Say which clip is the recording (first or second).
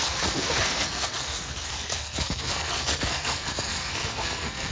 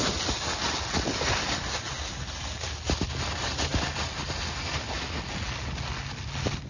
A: second